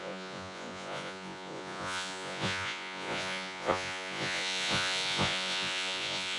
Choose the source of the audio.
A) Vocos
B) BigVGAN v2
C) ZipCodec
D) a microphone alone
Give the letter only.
A